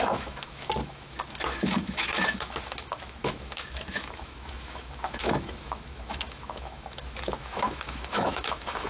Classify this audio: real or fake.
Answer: fake